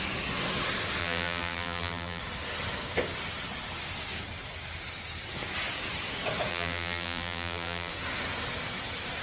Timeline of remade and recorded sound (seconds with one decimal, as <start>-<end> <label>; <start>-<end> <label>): 0.0-1.0 recorded; 1.0-2.2 remade; 2.2-6.5 recorded; 6.5-7.9 remade; 7.9-9.2 recorded